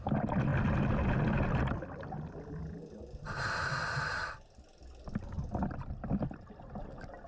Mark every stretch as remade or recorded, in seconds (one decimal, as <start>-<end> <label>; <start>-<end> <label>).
0.0-7.3 recorded